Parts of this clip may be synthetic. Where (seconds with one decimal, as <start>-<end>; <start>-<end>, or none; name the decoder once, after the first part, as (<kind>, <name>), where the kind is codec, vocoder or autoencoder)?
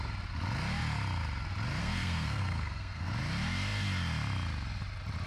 1.8-3.1 (codec, SNAC)